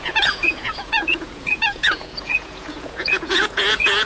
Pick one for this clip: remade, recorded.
remade